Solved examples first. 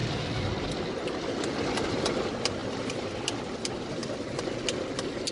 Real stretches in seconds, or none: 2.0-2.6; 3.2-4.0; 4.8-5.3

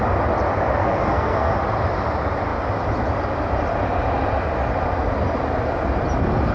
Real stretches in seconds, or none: 0.0-0.8; 1.5-6.5

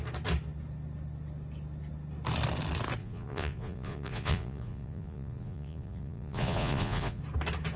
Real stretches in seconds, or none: 0.0-3.0; 7.2-7.8

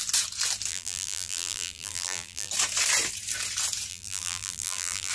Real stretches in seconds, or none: 0.0-0.7; 2.5-3.9

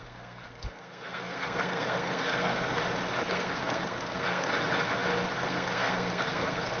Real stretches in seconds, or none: 2.8-3.3; 4.5-5.3